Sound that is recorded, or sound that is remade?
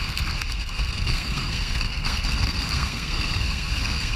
remade